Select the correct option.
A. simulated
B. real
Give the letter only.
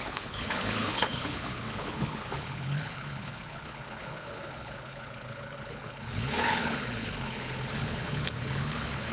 A